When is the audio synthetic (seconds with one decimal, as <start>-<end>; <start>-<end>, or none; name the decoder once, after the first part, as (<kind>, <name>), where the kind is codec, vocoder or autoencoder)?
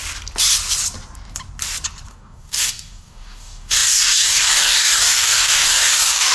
2.1-6.3 (codec, DAC)